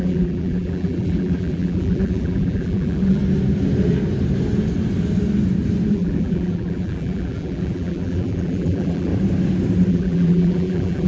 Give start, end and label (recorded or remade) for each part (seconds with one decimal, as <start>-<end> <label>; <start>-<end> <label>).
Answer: 0.0-3.2 remade; 3.2-5.9 recorded; 5.9-9.1 remade; 9.1-9.9 recorded; 9.9-11.1 remade